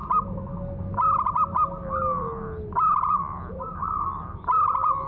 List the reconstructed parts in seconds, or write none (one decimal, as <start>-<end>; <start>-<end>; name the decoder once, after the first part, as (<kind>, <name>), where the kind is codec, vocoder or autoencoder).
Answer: none

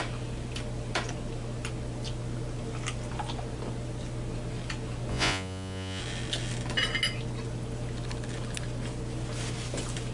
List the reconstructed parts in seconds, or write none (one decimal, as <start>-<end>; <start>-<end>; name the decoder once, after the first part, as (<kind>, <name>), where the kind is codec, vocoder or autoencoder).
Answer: 5.1-6.0 (vocoder, Vocos)

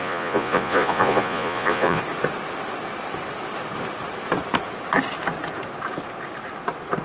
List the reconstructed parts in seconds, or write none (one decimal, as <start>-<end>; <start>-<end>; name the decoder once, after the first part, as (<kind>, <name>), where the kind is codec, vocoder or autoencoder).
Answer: 0.0-2.0 (vocoder, Vocos)

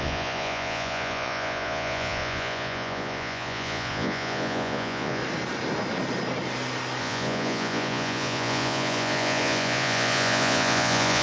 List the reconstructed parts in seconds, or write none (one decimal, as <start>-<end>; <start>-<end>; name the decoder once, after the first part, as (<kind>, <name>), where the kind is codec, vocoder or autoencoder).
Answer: 0.0-5.2 (vocoder, Vocos); 7.0-11.2

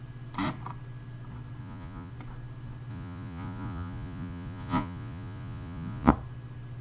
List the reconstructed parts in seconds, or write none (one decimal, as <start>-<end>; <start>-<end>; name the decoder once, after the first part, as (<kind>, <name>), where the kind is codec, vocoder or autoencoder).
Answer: 1.6-2.1 (vocoder, Vocos); 2.9-6.1

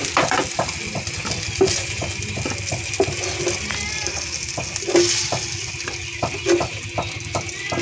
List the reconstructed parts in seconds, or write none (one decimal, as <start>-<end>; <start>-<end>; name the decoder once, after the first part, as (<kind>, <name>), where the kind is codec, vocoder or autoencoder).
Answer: none

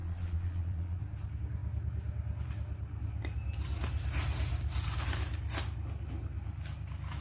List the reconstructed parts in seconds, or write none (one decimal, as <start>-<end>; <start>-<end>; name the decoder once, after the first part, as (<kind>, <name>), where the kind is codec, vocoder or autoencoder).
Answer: 0.0-1.0 (vocoder, Vocos)

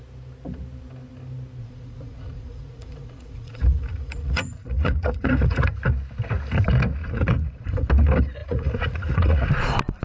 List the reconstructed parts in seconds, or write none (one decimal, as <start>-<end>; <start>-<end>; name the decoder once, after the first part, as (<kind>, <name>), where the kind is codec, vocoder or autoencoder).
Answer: 1.6-5.7 (vocoder, Vocos); 7.0-7.9; 8.4-9.5